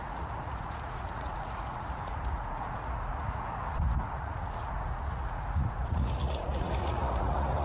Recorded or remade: remade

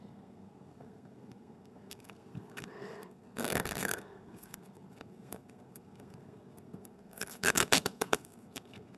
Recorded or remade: remade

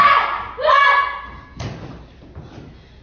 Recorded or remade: recorded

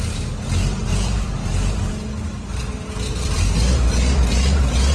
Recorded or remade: recorded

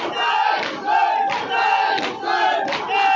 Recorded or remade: recorded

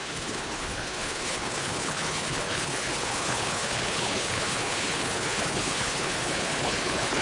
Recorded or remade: remade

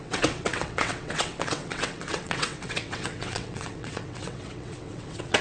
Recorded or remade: remade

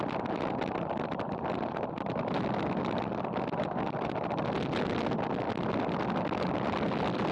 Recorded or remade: recorded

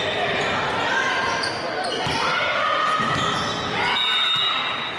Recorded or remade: recorded